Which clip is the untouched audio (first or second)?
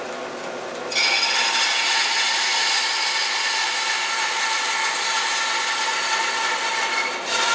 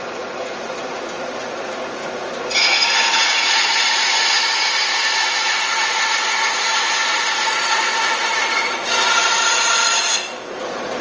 first